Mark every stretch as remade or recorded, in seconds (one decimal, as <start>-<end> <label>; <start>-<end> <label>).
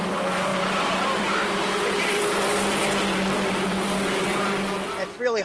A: 0.0-0.5 recorded; 0.5-2.8 remade; 2.8-5.4 recorded